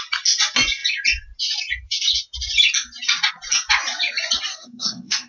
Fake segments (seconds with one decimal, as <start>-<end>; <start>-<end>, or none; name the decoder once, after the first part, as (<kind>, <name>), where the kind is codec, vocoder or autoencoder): 4.5-5.3 (codec, SNAC)